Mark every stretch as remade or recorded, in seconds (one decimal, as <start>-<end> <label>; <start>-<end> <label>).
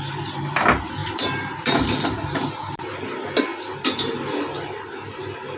0.0-1.0 recorded; 1.0-2.9 remade; 2.9-3.5 recorded; 3.5-4.1 remade; 4.1-5.6 recorded